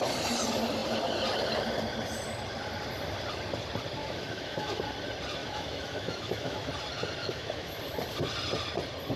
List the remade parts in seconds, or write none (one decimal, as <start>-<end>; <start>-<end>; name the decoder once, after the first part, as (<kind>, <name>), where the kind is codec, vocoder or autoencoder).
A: 4.0-4.8 (autoencoder, DAC-VAE); 5.4-6.7; 7.2-7.8